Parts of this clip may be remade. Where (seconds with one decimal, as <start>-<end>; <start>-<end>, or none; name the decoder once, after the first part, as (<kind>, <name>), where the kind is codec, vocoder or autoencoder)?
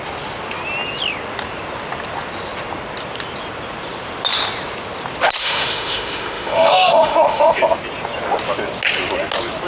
5.4-7.6 (autoencoder, DAC-VAE)